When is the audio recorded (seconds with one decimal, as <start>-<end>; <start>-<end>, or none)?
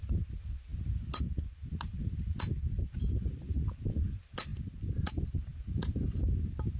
0.0-6.8